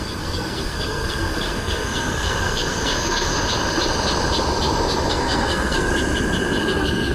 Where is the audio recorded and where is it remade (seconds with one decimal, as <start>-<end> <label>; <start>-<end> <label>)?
0.0-3.3 remade; 3.3-5.1 recorded; 5.1-5.9 remade; 5.9-6.6 recorded; 6.6-7.1 remade